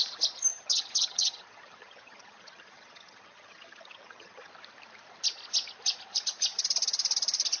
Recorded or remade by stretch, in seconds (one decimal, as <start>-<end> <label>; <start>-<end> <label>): 0.0-0.5 recorded; 0.5-4.5 remade; 4.5-7.6 recorded